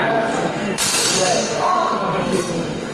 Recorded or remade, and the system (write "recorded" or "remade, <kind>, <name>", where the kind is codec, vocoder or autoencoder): remade, codec, SNAC